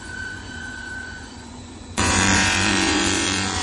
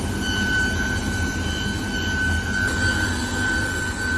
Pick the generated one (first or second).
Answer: first